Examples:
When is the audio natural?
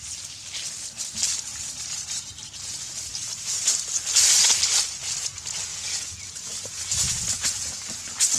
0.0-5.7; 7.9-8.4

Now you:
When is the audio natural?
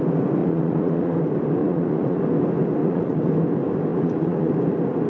0.0-0.4; 1.2-1.6; 2.2-2.8; 3.3-3.9; 4.5-5.1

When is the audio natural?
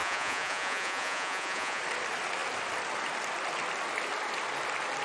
1.8-5.0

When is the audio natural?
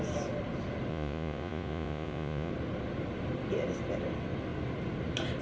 0.0-0.9; 2.5-5.4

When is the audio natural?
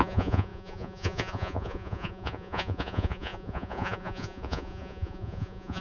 none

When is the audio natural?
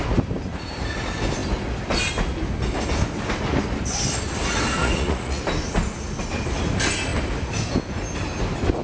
0.0-4.8; 5.4-8.8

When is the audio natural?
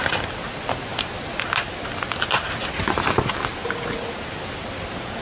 0.0-5.2